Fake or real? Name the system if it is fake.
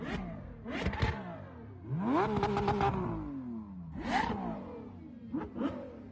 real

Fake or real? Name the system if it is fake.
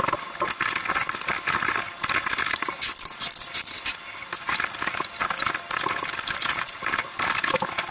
real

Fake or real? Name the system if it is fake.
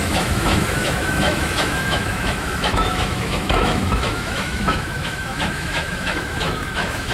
fake, autoencoder, DAC-VAE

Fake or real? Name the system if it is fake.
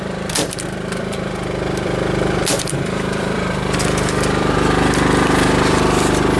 fake, vocoder, BigVGAN v2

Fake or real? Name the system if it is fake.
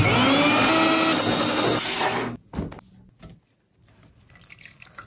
real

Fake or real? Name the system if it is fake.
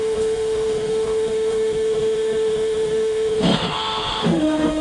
fake, autoencoder, DAC-VAE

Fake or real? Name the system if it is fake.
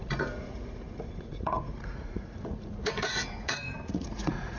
fake, vocoder, Vocos